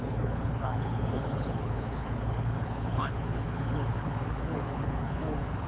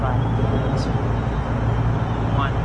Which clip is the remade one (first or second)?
first